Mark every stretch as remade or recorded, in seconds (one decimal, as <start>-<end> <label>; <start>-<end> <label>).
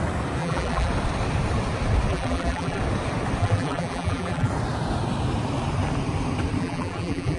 0.0-0.4 recorded; 0.4-0.9 remade; 0.9-2.1 recorded; 2.1-2.8 remade; 2.8-3.4 recorded; 3.4-4.5 remade; 4.5-6.6 recorded; 6.6-7.4 remade